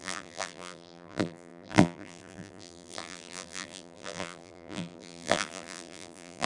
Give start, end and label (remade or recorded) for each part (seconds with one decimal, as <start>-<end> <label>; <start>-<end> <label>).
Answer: 0.0-6.5 remade